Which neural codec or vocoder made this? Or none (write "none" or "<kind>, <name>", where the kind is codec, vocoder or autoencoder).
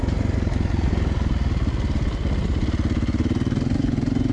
none